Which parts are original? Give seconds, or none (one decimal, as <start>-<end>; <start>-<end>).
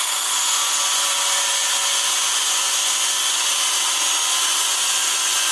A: 3.5-4.6